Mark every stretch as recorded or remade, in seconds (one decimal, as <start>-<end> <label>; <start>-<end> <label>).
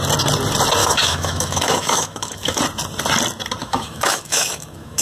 0.0-0.8 recorded; 0.8-2.6 remade; 2.6-3.6 recorded; 3.6-5.0 remade